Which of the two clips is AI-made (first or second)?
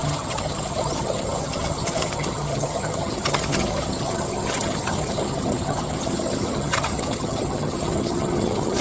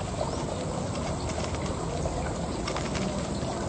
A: first